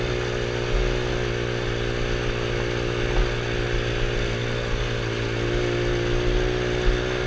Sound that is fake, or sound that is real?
real